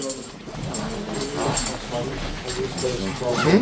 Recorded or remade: recorded